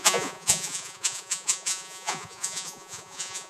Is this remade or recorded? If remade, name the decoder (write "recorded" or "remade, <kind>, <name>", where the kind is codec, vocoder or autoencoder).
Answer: remade, vocoder, Vocos